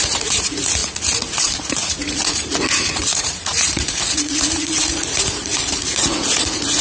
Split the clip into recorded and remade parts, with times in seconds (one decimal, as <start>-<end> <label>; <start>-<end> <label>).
0.0-6.8 remade